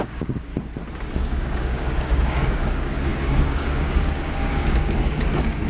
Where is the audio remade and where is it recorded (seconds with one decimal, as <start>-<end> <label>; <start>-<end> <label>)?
0.0-0.5 remade; 0.5-1.1 recorded; 1.1-5.7 remade